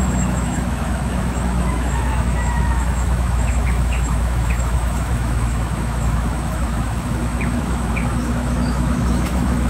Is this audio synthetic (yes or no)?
yes